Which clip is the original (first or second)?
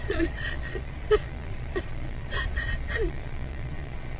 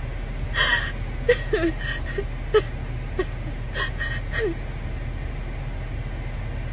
second